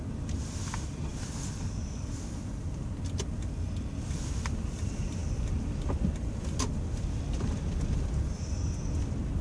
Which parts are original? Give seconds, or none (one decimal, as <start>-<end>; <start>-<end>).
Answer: 0.0-9.4